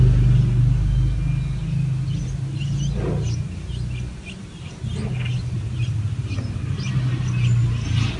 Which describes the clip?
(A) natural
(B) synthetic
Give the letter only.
A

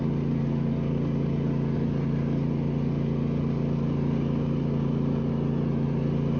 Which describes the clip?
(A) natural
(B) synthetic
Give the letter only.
A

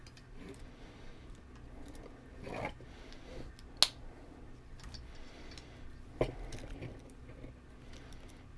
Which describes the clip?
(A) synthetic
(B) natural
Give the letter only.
B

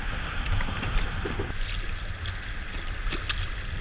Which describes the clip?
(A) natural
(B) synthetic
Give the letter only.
A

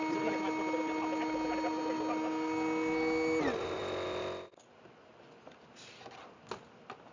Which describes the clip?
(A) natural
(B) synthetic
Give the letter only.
A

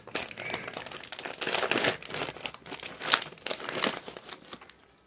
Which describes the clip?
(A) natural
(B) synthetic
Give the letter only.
A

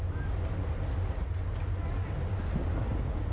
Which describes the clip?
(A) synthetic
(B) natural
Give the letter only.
B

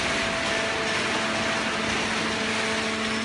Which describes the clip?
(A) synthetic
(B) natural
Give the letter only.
B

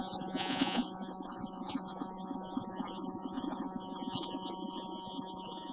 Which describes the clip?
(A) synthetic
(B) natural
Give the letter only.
A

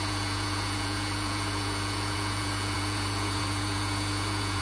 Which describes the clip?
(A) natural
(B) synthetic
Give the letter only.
B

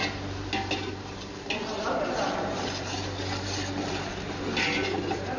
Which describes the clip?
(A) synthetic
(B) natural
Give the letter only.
B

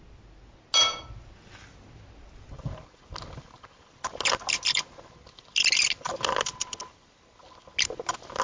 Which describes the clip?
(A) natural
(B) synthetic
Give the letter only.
A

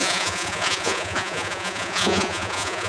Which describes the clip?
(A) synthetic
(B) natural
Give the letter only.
A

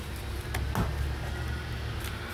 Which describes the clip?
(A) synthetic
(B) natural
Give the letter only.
B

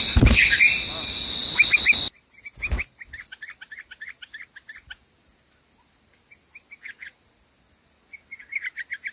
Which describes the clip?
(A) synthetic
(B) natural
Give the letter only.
B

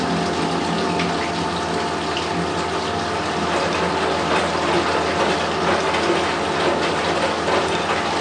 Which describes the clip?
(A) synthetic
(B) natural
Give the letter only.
B